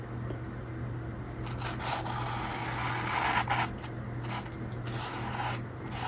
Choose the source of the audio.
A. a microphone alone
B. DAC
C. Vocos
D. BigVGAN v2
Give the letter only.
A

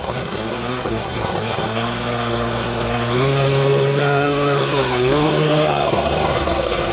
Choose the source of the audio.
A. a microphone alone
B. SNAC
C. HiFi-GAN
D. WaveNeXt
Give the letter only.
B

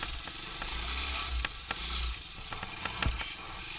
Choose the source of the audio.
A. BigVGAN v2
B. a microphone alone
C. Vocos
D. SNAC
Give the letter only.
B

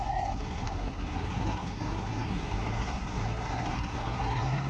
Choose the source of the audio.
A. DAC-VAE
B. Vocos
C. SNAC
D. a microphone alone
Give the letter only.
C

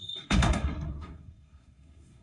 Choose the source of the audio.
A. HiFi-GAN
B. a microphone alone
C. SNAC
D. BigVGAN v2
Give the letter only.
C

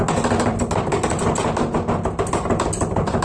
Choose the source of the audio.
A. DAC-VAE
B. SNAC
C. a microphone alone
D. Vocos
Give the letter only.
C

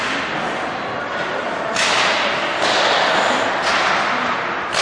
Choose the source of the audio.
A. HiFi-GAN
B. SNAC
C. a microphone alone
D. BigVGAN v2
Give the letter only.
C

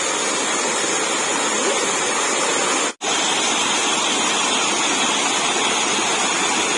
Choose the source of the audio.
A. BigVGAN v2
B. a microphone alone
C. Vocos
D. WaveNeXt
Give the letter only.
B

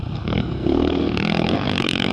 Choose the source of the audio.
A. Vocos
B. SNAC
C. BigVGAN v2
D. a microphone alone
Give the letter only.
B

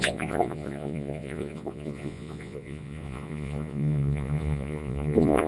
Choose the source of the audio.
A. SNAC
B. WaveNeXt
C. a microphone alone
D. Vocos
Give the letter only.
D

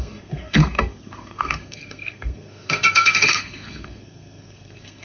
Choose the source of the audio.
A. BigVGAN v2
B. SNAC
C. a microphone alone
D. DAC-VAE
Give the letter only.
B